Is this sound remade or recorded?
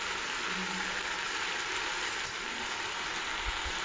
recorded